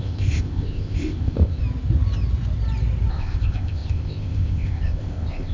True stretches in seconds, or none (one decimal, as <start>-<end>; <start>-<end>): 1.6-3.1